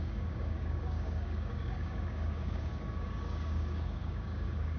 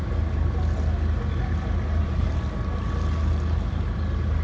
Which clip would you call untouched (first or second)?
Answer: second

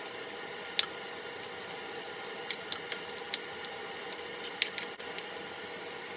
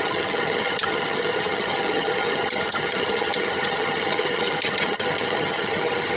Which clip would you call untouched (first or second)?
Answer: first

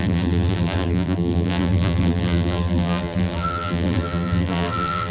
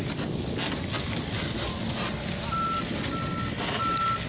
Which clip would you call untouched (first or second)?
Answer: second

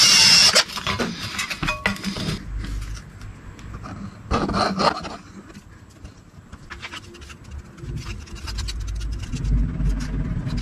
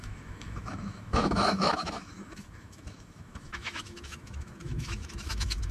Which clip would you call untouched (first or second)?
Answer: first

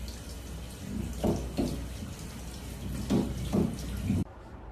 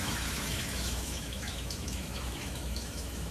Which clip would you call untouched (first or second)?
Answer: first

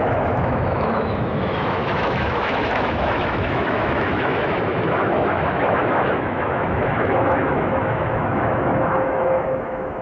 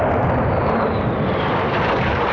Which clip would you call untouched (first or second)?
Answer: second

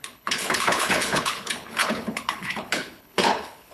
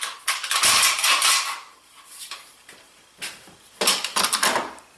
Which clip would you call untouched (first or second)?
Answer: second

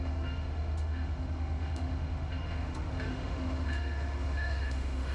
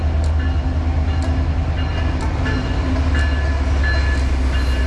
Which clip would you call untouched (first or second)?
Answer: second